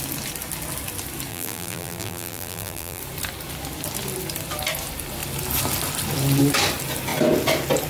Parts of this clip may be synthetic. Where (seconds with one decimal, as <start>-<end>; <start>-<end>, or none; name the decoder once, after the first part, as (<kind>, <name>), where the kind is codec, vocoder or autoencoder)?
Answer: 1.3-3.0 (vocoder, BigVGAN v2)